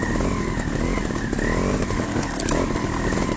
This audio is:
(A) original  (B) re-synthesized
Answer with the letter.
A